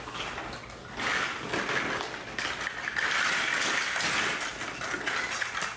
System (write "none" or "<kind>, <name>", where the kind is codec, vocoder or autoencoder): none